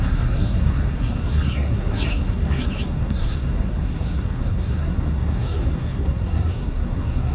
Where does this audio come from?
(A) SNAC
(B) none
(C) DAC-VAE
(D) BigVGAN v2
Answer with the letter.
A